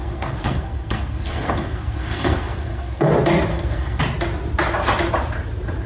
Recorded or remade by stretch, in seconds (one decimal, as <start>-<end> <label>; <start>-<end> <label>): 0.0-3.1 remade; 3.1-3.5 recorded; 3.5-4.0 remade; 4.0-5.9 recorded